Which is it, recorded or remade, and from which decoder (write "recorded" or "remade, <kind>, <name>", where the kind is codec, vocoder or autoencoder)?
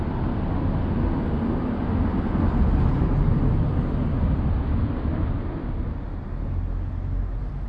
recorded